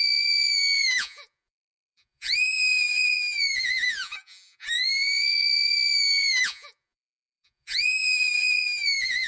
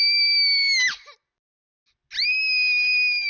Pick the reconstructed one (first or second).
first